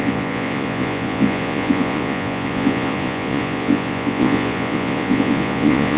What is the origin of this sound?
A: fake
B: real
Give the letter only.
A